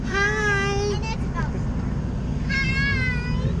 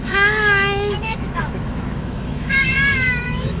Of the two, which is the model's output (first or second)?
second